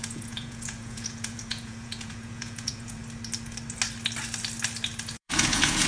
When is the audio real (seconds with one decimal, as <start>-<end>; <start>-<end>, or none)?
3.0-5.1